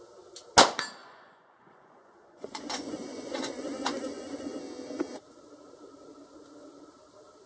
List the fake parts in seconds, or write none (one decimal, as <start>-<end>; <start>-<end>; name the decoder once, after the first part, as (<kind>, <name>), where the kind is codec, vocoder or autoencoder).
1.0-4.5 (vocoder, Vocos)